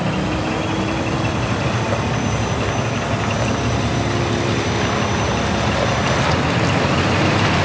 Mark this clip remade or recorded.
recorded